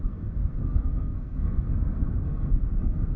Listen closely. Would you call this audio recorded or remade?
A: remade